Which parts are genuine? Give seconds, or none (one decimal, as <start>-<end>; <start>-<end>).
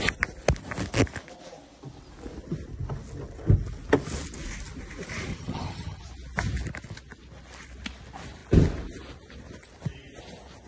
0.0-5.3; 6.0-10.7